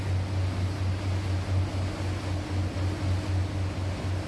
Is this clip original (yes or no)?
yes